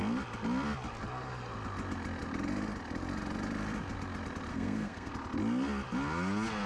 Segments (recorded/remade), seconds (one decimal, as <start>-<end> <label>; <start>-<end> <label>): 0.0-4.5 recorded; 4.5-5.1 remade; 5.1-6.7 recorded